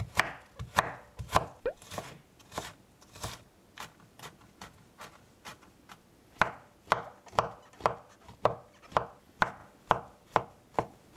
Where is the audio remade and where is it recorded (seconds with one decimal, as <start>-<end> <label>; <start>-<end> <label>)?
0.0-11.2 recorded